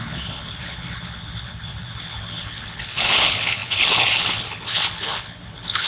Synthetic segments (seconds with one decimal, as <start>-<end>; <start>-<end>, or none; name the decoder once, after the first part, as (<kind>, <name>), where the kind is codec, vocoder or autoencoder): 0.0-5.9 (codec, HILCodec)